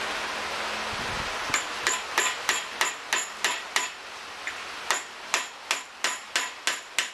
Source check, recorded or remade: recorded